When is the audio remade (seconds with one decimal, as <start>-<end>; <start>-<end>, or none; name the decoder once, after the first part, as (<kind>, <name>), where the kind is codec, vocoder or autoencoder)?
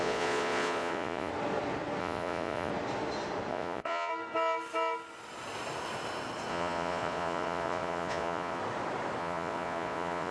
0.0-1.3 (vocoder, Vocos); 2.0-2.7; 3.5-4.1; 6.5-8.6; 9.2-10.3